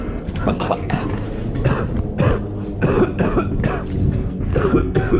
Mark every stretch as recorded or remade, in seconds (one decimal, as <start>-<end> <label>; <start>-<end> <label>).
0.0-1.0 remade; 1.0-4.0 recorded; 4.0-5.2 remade